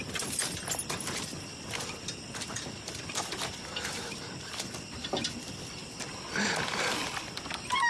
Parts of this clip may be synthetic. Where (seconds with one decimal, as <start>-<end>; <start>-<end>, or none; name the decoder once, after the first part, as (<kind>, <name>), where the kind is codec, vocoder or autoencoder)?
none